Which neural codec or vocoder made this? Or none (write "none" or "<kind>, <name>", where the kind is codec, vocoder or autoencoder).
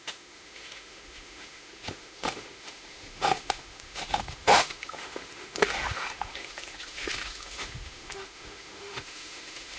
autoencoder, DAC-VAE